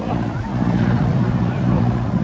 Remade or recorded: remade